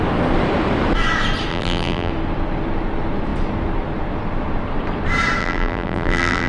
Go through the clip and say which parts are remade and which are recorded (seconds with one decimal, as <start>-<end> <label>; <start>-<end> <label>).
0.0-1.5 recorded; 1.5-2.1 remade; 2.1-5.4 recorded; 5.4-6.5 remade